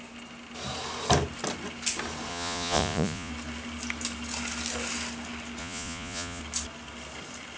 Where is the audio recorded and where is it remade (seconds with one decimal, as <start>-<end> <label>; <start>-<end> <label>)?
0.0-2.3 recorded; 2.3-3.3 remade; 3.3-5.6 recorded; 5.6-6.4 remade; 6.4-7.6 recorded